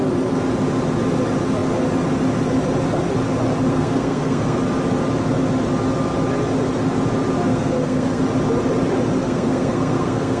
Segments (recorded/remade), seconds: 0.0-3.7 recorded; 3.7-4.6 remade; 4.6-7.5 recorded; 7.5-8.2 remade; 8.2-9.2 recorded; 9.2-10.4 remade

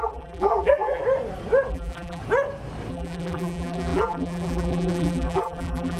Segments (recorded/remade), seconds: 0.0-1.0 remade; 1.0-1.7 recorded; 1.7-2.2 remade; 2.2-2.9 recorded; 2.9-6.0 remade

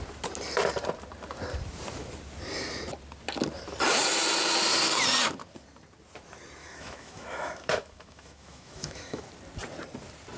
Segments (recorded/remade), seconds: 0.0-6.6 recorded; 6.6-9.2 remade; 9.2-10.4 recorded

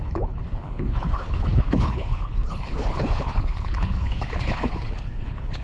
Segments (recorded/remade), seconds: 0.0-5.6 remade

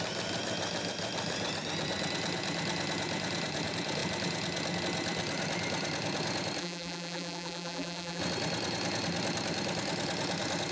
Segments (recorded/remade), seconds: 0.0-6.6 recorded; 6.6-8.2 remade; 8.2-10.7 recorded